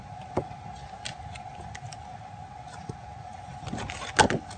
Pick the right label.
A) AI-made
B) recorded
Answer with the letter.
B